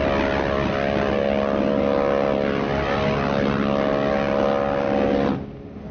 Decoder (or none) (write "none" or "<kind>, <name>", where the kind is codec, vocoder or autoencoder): none